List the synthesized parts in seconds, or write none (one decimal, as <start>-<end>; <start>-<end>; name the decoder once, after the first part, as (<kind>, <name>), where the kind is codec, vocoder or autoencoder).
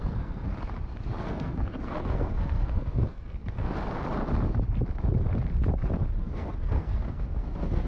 0.0-0.5 (codec, SNAC); 1.2-3.7; 6.2-7.9